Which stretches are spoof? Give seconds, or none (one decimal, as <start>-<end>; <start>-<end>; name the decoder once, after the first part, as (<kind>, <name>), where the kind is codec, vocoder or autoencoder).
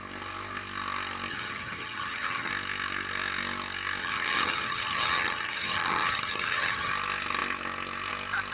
1.3-2.5 (vocoder, HiFi-GAN); 4.0-6.9